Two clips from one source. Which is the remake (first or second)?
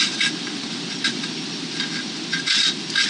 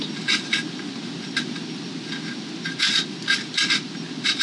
first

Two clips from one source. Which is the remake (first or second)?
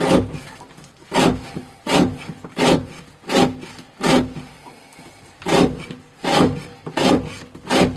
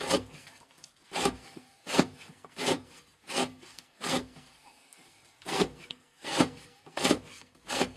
second